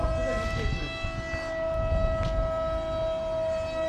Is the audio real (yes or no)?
yes